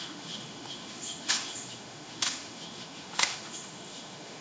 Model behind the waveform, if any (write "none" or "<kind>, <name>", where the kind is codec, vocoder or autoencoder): autoencoder, DAC-VAE